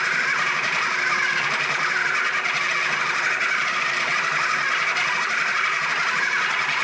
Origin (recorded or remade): remade